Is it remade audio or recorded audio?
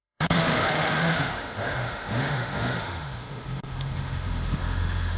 remade